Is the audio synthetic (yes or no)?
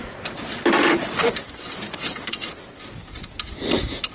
no